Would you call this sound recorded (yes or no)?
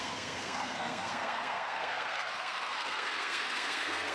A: no